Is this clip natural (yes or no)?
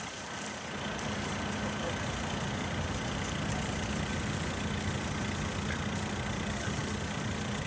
yes